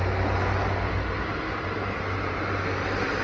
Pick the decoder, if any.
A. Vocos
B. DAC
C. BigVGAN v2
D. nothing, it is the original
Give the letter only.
D